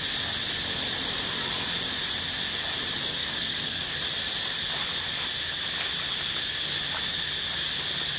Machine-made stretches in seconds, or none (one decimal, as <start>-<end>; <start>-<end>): 3.2-3.9